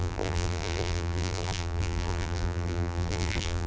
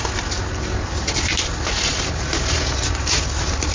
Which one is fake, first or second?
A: first